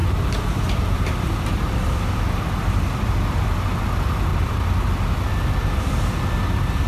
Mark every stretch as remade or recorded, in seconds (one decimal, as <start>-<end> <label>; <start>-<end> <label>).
0.0-3.8 remade; 3.8-4.3 recorded; 4.3-5.9 remade; 5.9-6.9 recorded